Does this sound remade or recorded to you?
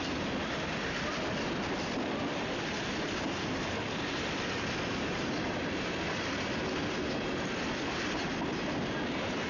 recorded